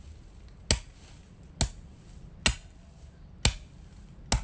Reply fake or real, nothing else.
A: real